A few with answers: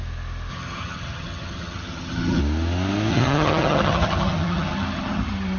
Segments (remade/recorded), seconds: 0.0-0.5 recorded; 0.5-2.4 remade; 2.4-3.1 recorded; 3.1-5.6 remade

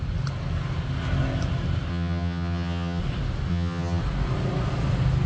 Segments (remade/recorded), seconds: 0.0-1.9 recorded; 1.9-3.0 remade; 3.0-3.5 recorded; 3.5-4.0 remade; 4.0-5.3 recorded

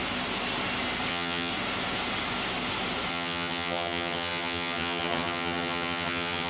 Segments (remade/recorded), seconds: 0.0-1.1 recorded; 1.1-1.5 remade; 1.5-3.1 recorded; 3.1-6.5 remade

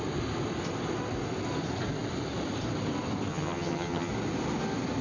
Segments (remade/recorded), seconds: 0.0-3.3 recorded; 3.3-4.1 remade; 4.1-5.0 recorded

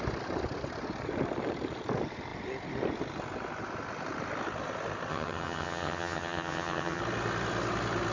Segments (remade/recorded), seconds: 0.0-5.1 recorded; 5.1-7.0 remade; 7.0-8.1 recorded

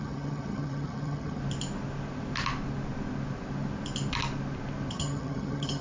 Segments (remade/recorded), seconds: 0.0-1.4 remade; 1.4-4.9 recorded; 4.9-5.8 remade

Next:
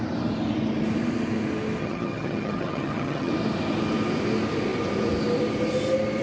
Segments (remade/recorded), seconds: 0.0-1.8 recorded; 1.8-3.3 remade; 3.3-6.2 recorded